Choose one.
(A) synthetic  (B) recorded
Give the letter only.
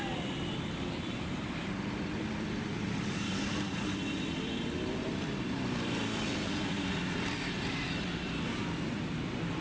A